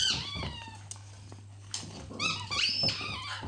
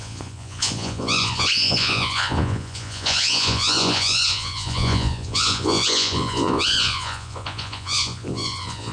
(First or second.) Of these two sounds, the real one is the first